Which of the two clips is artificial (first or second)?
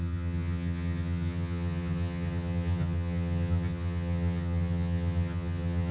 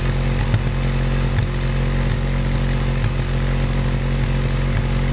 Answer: first